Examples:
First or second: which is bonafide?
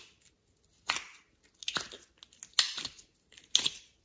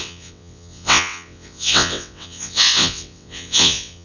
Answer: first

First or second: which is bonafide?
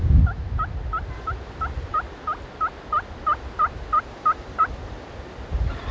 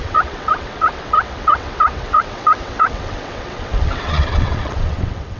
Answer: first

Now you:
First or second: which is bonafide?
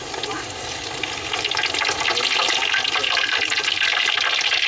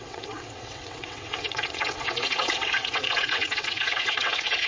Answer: first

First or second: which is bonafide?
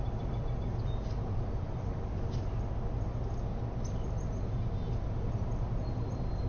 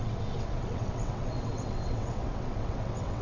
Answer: first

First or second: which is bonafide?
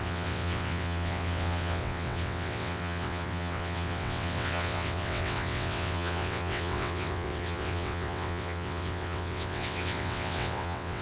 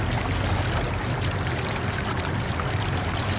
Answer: second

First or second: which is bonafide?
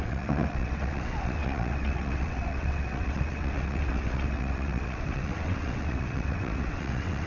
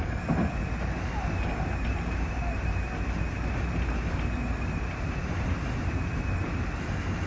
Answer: second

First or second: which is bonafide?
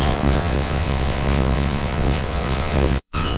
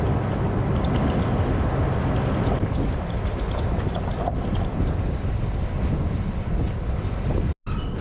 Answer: second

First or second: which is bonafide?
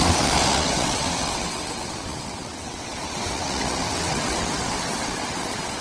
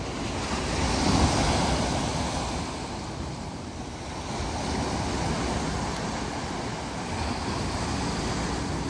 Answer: second